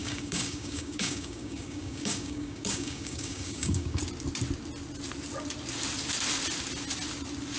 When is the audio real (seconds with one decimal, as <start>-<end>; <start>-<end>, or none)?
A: 4.0-7.6